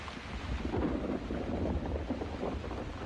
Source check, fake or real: real